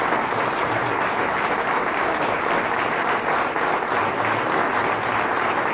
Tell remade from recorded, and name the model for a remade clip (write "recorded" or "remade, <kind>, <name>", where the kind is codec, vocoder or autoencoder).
recorded